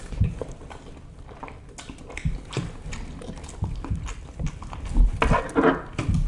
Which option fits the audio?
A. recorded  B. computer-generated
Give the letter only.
A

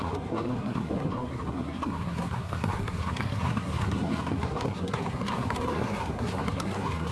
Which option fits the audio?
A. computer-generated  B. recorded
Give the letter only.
A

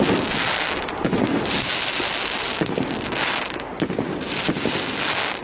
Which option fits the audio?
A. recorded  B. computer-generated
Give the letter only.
A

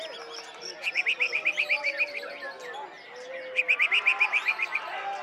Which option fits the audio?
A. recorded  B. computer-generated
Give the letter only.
A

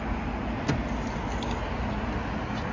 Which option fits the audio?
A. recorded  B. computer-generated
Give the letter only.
A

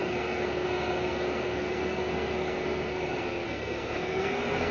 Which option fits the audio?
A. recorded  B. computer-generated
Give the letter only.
B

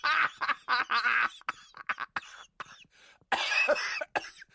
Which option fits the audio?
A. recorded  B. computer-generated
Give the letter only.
A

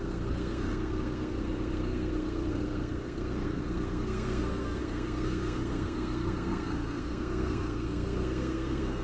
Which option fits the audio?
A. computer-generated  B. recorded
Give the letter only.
A